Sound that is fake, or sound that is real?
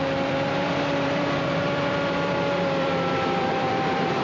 fake